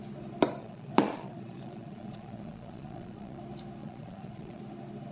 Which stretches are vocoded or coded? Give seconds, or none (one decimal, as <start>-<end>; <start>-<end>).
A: 0.6-3.4; 3.8-4.6